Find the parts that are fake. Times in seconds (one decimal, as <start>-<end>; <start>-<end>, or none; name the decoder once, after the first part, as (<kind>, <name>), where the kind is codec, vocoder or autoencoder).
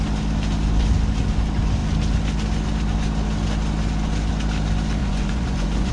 5.0-5.9 (vocoder, Vocos)